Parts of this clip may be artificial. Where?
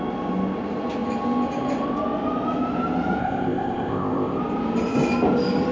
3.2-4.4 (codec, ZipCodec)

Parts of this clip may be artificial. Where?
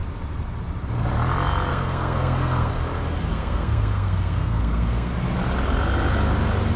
1.7-2.7 (codec, SNAC); 3.3-5.1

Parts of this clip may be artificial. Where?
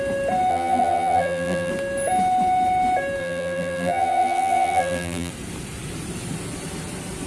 0.5-1.7 (vocoder, BigVGAN v2); 3.2-5.3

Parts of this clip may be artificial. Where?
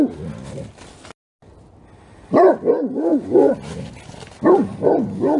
none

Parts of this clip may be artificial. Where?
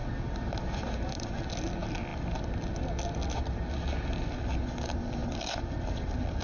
none